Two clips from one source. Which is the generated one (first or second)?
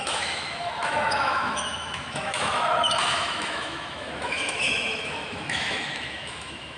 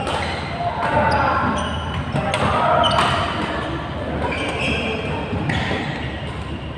first